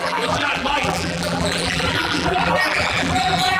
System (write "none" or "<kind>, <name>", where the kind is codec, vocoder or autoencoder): vocoder, BigVGAN v2